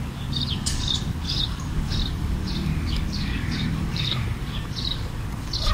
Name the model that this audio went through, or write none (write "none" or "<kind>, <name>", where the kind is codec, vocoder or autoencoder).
codec, DAC